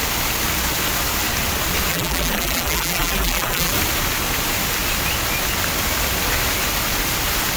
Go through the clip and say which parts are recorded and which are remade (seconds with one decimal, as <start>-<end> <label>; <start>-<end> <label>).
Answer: 0.0-1.9 recorded; 1.9-3.7 remade; 3.7-7.6 recorded